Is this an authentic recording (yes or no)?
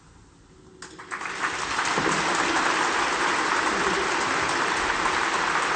yes